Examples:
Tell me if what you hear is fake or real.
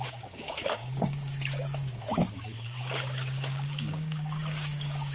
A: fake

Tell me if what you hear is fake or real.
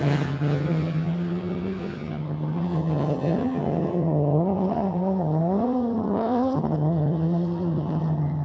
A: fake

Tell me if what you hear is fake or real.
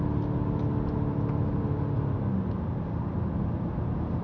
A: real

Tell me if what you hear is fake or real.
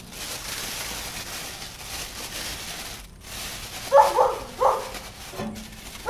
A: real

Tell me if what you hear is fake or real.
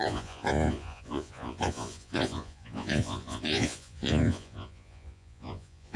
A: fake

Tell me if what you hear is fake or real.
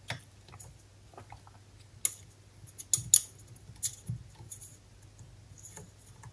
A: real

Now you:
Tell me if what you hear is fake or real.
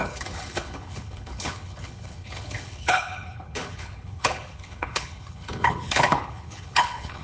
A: fake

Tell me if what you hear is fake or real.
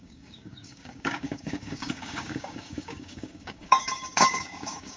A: fake